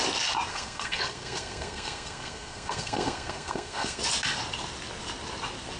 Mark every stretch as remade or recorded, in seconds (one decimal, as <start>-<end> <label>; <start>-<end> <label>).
0.0-0.5 recorded; 0.5-4.0 remade; 4.0-5.8 recorded